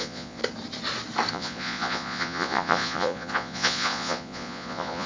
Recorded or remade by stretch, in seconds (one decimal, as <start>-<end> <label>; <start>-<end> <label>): 0.0-0.4 remade; 0.4-1.3 recorded; 1.3-5.1 remade